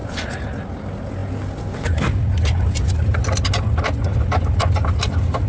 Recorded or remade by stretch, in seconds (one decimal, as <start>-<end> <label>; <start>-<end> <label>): 0.0-5.5 recorded